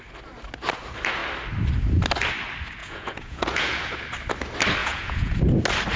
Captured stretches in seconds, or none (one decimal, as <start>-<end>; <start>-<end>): 0.0-2.8; 3.9-4.8; 5.4-6.0